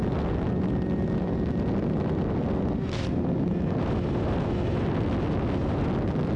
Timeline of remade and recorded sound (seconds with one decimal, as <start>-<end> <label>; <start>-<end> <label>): 0.0-6.4 recorded